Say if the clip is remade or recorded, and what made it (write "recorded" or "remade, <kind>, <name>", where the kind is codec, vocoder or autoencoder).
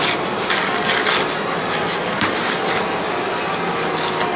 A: recorded